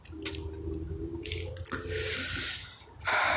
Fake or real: real